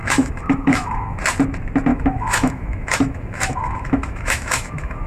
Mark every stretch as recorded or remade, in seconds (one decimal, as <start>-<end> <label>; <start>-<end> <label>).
0.0-1.2 remade; 1.2-1.9 recorded; 1.9-5.1 remade